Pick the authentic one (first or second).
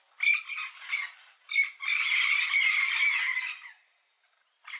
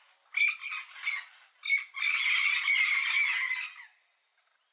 second